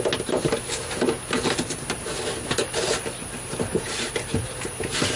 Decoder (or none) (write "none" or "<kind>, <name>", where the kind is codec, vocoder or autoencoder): none